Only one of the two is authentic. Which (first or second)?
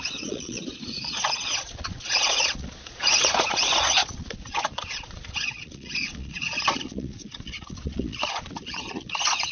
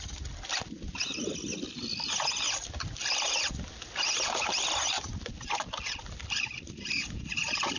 second